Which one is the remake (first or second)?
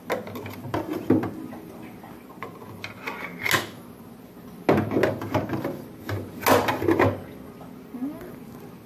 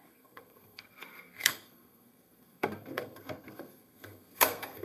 second